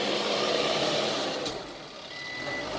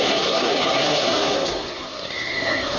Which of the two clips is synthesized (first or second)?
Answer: second